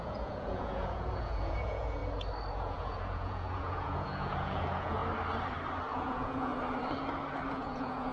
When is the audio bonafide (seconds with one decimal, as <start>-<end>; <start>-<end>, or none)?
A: 2.0-2.5; 5.0-5.9; 6.5-7.5